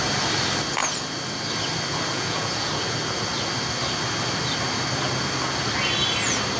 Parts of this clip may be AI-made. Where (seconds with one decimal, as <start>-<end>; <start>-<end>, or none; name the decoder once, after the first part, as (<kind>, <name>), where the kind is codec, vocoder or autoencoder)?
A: 2.1-2.7 (vocoder, Vocos)